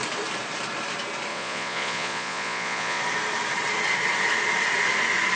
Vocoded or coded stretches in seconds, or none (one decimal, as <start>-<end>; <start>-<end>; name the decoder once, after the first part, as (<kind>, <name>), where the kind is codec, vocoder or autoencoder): 1.3-3.0 (vocoder, Vocos)